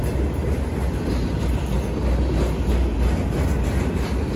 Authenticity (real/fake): real